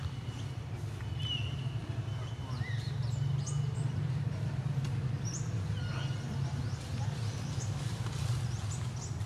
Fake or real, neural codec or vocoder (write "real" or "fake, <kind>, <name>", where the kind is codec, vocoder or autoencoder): real